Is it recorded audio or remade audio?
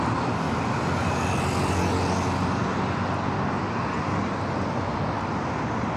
recorded